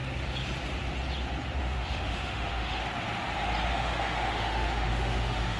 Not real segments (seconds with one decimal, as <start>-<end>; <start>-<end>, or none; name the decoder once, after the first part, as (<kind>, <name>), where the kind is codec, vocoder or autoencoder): 1.6-2.8 (autoencoder, DAC-VAE); 3.7-5.6